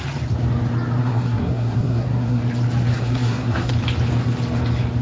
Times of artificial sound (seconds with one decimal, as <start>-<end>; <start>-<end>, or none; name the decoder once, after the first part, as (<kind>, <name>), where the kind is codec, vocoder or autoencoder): 1.0-2.4 (codec, SNAC); 2.9-3.7